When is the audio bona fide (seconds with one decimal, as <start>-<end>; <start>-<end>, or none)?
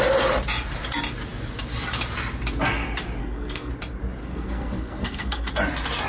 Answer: 0.0-3.2; 3.7-4.2; 5.5-6.1